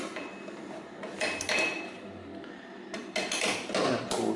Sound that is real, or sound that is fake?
real